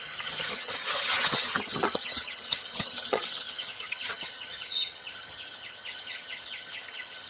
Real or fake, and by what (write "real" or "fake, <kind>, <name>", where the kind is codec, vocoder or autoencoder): fake, vocoder, HiFi-GAN